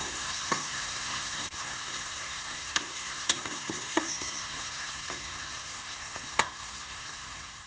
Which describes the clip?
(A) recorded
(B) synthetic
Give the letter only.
B